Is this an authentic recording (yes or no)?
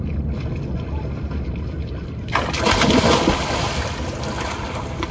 yes